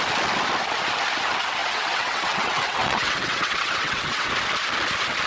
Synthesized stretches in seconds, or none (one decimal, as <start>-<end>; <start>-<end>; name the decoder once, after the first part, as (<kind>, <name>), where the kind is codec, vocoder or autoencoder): 1.6-4.3 (vocoder, WaveNeXt)